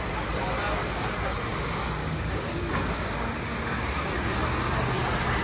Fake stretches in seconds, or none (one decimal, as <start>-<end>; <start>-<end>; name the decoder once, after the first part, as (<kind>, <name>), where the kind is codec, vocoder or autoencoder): 2.0-4.1 (codec, DAC)